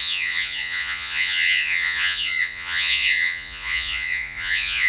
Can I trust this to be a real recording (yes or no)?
no